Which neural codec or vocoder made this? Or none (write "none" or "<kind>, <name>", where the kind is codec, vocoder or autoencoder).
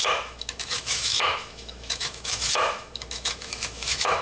autoencoder, DAC-VAE